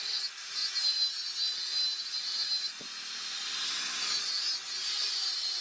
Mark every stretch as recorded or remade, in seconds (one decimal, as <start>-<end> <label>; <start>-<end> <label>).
0.0-5.6 recorded